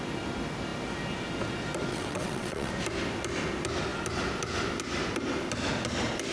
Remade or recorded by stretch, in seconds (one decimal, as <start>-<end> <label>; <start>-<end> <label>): 0.0-1.9 recorded; 1.9-2.7 remade; 2.7-6.3 recorded

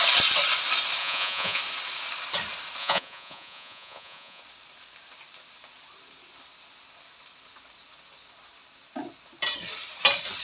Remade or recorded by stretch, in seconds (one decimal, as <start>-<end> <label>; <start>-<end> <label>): 0.0-1.0 recorded; 1.0-1.6 remade; 1.6-2.8 recorded; 2.8-4.4 remade; 4.4-10.4 recorded

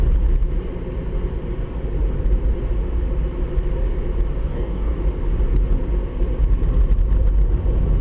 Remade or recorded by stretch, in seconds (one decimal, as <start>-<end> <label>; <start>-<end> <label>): 0.0-4.4 recorded; 4.4-4.9 remade; 4.9-8.0 recorded